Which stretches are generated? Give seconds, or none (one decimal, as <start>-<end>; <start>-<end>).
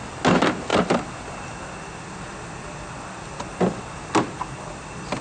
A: none